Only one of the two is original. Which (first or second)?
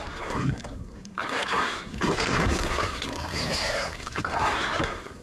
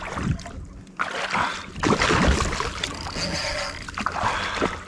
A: second